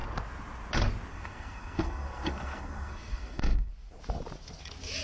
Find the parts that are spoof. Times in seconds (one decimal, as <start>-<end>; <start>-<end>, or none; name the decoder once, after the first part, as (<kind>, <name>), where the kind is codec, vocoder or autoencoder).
1.1-3.7 (codec, SNAC)